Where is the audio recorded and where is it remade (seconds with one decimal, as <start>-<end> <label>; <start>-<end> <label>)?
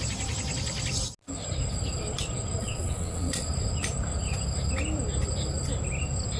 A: 0.0-2.6 recorded; 2.6-3.4 remade; 3.4-6.4 recorded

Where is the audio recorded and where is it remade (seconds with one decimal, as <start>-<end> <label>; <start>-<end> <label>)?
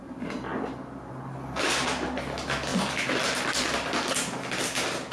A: 0.0-5.1 recorded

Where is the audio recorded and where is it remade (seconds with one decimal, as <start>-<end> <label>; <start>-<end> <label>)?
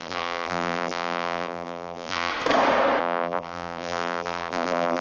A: 0.0-2.3 remade; 2.3-3.0 recorded; 3.0-5.0 remade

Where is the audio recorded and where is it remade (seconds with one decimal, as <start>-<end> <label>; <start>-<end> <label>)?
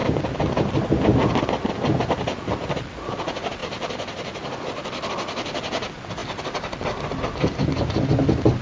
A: 0.0-8.6 recorded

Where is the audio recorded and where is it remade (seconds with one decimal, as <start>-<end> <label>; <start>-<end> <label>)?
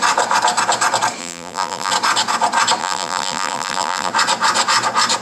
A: 0.0-1.2 recorded; 1.2-1.9 remade; 1.9-2.8 recorded; 2.8-4.1 remade; 4.1-5.2 recorded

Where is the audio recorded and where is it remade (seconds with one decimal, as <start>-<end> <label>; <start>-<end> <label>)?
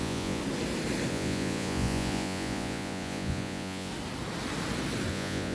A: 0.0-0.4 remade; 0.4-1.1 recorded; 1.1-3.9 remade; 3.9-5.1 recorded; 5.1-5.5 remade